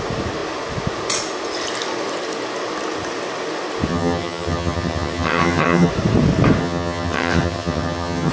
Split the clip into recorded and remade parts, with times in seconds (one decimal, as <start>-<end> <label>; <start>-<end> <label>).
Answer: 0.0-3.9 recorded; 3.9-5.9 remade; 5.9-6.6 recorded; 6.6-8.3 remade